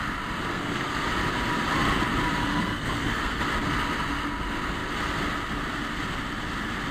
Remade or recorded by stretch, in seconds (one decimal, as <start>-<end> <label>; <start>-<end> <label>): 0.0-0.5 recorded; 0.5-1.1 remade; 1.1-2.4 recorded; 2.4-3.4 remade; 3.4-6.9 recorded